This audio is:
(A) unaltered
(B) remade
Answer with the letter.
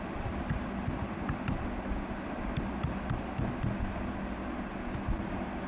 A